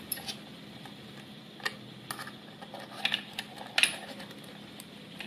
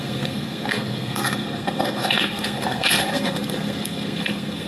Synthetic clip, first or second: second